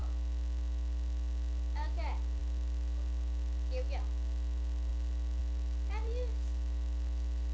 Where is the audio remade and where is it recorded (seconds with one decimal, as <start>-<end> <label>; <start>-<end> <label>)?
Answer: 0.0-7.5 recorded